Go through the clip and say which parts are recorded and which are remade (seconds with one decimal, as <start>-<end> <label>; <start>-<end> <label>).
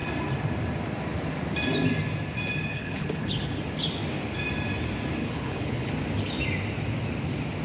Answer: 0.0-2.7 recorded; 2.7-3.6 remade; 3.6-5.2 recorded; 5.2-5.9 remade; 5.9-7.6 recorded